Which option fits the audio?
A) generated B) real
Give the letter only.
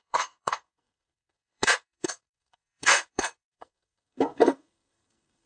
A